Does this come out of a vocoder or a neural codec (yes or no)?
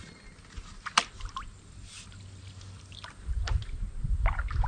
no